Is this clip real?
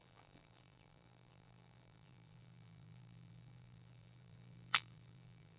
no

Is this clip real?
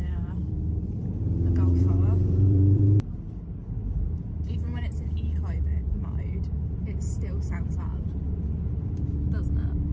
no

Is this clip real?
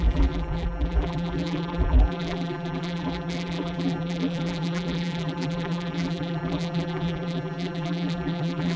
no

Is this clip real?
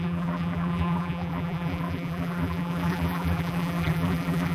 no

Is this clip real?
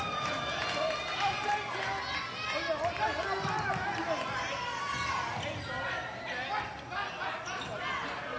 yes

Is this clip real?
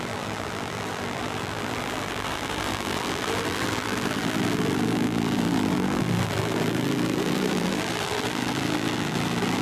no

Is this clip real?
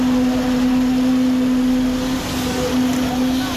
yes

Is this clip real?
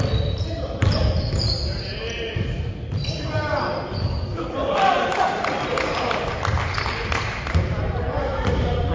no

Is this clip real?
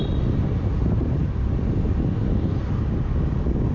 yes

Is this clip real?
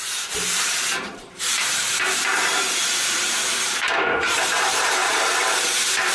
no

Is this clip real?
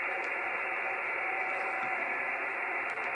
no